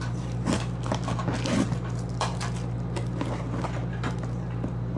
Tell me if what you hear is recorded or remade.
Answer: recorded